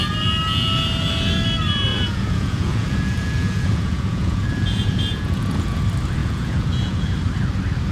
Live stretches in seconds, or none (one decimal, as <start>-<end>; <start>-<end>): 0.0-1.9; 5.8-6.2; 7.1-7.9